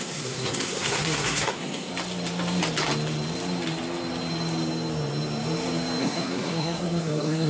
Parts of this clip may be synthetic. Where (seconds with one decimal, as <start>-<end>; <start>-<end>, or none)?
0.0-1.9; 6.0-7.5

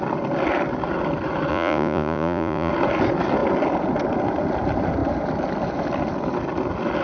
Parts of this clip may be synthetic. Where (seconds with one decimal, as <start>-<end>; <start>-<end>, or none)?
1.5-2.7

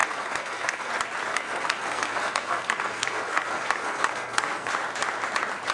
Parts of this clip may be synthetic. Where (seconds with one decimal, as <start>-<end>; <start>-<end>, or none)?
0.0-0.9; 1.3-4.7

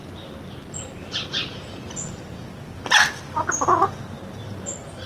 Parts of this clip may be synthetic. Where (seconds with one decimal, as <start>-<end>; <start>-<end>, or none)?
none

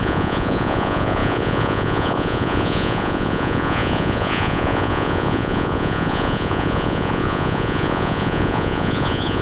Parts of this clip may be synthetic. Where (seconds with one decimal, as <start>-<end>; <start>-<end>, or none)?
0.0-9.4

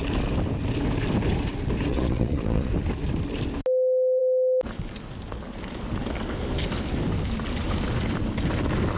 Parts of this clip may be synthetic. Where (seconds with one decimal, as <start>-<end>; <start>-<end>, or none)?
1.9-2.7